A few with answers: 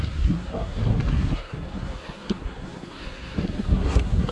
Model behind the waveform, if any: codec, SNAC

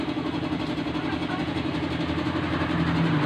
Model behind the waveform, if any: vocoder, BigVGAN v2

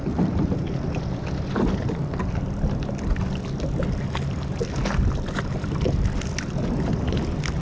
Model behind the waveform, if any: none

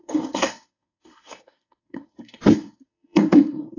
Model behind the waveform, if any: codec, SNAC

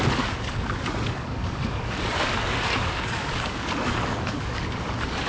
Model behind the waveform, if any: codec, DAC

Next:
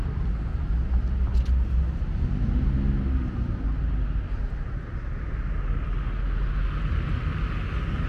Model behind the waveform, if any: none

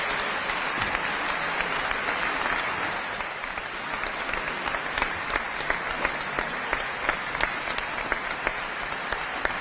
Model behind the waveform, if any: none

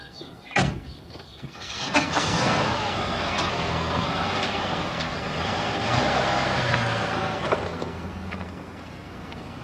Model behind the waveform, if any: codec, SNAC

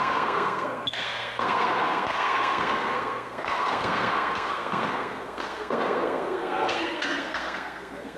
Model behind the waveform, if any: codec, SNAC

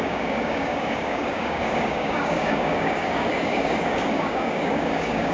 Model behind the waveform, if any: codec, DAC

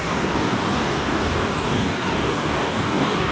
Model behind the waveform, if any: codec, DAC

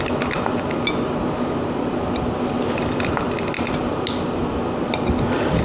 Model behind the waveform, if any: none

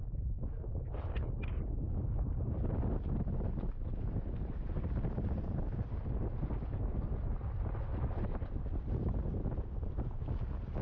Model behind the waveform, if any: none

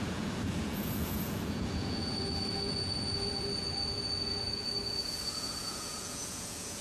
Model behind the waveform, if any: vocoder, Vocos